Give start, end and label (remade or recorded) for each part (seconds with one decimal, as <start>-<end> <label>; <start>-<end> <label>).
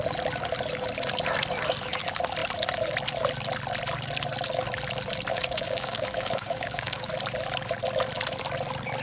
0.0-5.3 recorded; 5.3-7.1 remade; 7.1-9.0 recorded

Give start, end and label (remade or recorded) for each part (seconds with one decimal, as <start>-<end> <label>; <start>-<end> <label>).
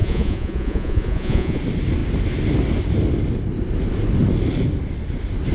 0.0-1.6 remade; 1.6-5.5 recorded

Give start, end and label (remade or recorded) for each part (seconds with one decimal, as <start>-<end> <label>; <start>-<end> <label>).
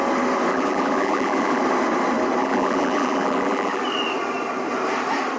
0.0-0.5 recorded; 0.5-1.6 remade; 1.6-2.4 recorded; 2.4-3.8 remade; 3.8-5.4 recorded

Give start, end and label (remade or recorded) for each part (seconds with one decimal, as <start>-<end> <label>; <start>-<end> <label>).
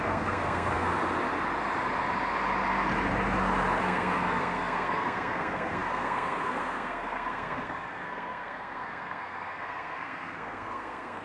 0.0-0.9 remade; 0.9-3.8 recorded; 3.8-11.2 remade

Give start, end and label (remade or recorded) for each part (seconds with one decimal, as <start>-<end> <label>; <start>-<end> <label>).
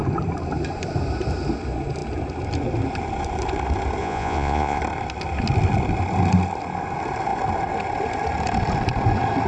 0.0-4.0 recorded; 4.0-4.8 remade; 4.8-9.5 recorded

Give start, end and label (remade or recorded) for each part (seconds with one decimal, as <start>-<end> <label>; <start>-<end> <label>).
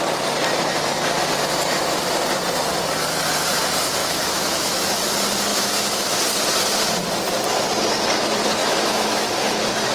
0.0-4.0 recorded; 4.0-5.0 remade; 5.0-5.5 recorded; 5.5-6.2 remade; 6.2-8.6 recorded; 8.6-9.3 remade; 9.3-9.9 recorded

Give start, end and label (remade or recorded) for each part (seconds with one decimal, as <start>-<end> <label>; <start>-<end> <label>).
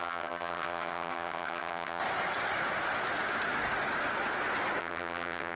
0.0-2.0 remade; 2.0-4.8 recorded; 4.8-5.6 remade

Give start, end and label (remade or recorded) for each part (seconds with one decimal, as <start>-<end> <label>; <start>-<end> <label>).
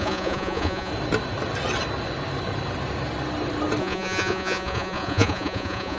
0.0-0.9 remade; 0.9-3.8 recorded; 3.8-6.0 remade